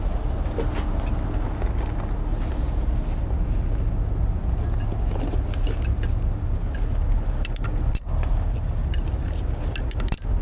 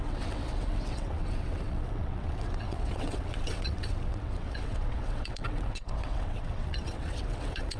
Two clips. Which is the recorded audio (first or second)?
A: first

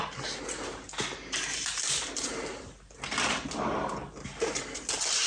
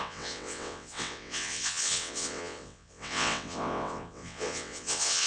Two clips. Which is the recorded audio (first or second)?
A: first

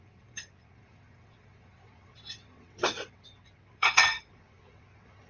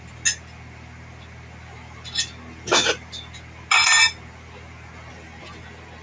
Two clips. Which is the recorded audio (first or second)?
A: second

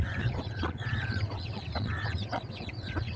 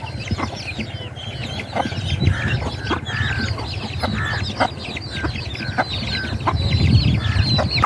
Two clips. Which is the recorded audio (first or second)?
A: second